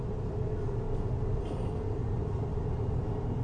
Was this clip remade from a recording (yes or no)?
no